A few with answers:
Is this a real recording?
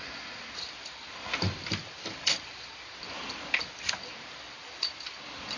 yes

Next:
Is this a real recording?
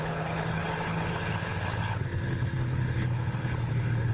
no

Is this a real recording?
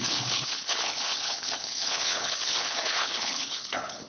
no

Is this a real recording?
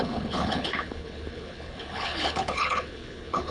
no